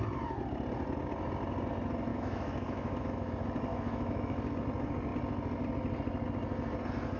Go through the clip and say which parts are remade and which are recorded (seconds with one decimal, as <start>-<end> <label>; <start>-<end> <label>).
0.0-2.1 recorded; 2.1-3.3 remade; 3.3-3.7 recorded; 3.7-4.4 remade; 4.4-7.2 recorded